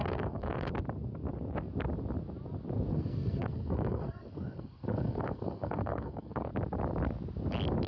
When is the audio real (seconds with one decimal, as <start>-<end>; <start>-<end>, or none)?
0.7-2.9; 6.5-7.9